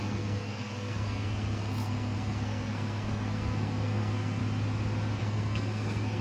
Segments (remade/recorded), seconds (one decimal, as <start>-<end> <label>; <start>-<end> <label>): 0.0-4.4 remade; 4.4-5.2 recorded; 5.2-6.2 remade